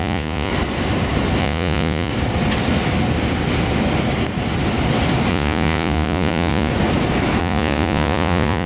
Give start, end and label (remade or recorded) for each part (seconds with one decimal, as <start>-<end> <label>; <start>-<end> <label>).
0.0-0.5 remade; 0.5-1.4 recorded; 1.4-2.1 remade; 2.1-5.3 recorded; 5.3-6.7 remade; 6.7-7.4 recorded; 7.4-8.7 remade